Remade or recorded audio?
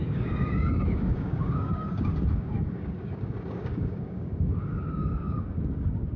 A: remade